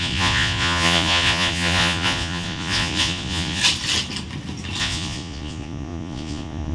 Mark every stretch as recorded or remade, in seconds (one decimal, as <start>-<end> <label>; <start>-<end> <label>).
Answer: 0.0-3.6 remade; 3.6-4.8 recorded; 4.8-6.7 remade